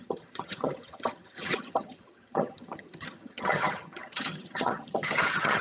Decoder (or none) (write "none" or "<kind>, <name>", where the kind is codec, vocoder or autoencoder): vocoder, HiFi-GAN